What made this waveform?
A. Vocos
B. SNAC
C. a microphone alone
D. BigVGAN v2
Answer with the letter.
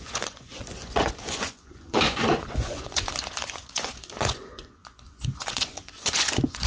A